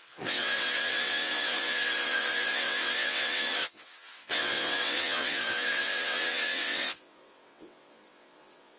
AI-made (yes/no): yes